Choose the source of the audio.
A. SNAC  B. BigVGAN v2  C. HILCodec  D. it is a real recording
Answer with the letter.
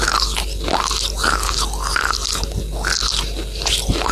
D